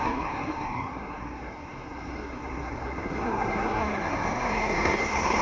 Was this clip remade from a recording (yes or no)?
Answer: yes